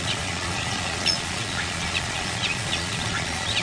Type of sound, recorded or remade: remade